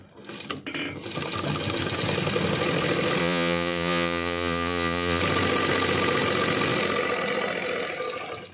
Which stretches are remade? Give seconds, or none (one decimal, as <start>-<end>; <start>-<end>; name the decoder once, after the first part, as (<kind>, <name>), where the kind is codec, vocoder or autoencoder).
3.2-5.2 (vocoder, Vocos)